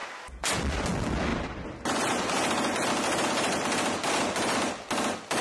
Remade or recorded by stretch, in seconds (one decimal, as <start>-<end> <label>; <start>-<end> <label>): 0.0-5.4 recorded